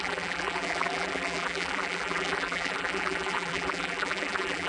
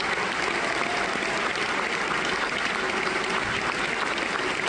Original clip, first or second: second